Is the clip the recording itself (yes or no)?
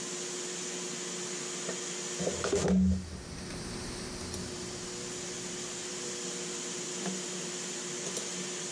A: yes